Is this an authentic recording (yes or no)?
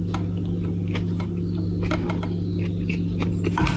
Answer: yes